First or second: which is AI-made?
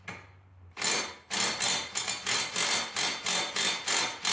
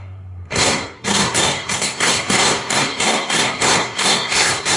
second